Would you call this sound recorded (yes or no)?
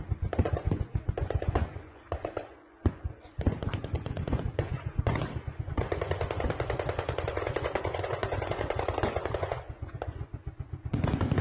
no